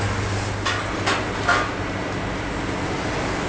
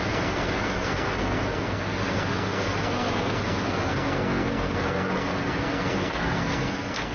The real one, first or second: first